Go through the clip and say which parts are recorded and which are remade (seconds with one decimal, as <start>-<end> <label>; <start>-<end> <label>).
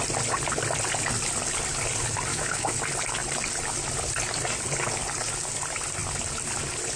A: 0.0-2.3 recorded; 2.3-2.8 remade; 2.8-7.0 recorded